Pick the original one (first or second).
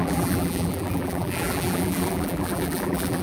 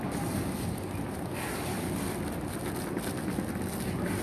second